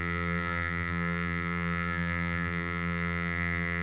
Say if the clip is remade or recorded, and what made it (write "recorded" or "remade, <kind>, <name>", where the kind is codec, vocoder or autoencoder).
remade, vocoder, BigVGAN v2